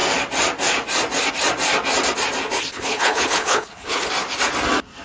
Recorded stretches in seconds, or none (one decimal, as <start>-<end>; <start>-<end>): 0.0-2.7; 4.1-5.0